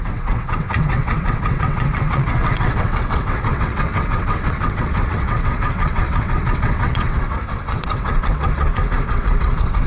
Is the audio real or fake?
fake